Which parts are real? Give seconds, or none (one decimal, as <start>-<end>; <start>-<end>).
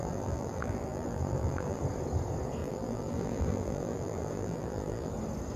1.8-2.6; 5.1-5.6